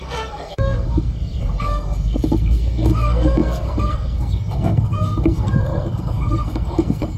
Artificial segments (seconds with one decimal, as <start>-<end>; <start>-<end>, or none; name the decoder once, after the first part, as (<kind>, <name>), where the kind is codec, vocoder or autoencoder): 0.0-7.2 (codec, SNAC)